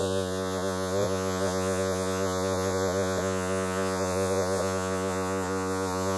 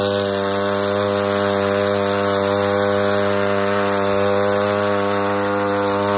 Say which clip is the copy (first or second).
first